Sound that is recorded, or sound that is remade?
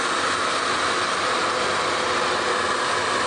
recorded